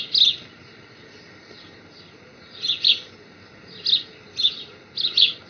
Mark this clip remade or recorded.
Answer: recorded